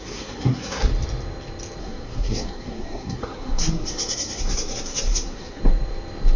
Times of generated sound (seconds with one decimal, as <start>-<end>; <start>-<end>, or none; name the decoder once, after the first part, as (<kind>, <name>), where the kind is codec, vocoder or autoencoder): 0.0-0.9 (codec, SNAC); 1.8-5.6